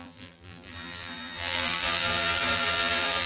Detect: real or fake fake